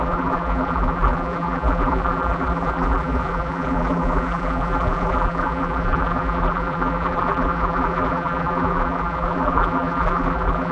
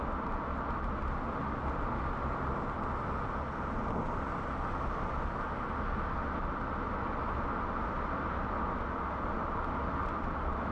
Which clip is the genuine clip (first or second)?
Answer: second